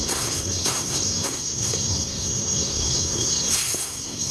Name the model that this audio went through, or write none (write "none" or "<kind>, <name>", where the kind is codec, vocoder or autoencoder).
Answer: codec, SNAC